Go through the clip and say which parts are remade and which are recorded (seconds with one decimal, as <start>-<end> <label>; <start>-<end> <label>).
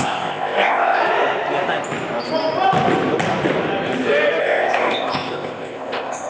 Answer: 0.0-1.0 remade; 1.0-4.4 recorded; 4.4-6.3 remade